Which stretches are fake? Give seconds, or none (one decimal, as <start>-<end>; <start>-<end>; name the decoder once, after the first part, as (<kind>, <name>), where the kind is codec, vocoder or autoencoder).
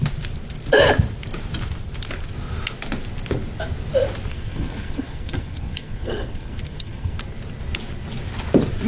4.3-7.2 (codec, SNAC)